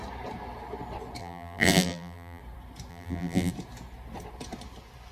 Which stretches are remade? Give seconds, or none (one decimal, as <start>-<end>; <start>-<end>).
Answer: 1.2-2.4; 2.9-3.5